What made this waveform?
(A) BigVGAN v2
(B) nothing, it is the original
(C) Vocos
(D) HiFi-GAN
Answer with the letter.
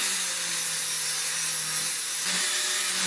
B